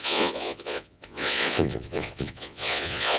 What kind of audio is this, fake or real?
fake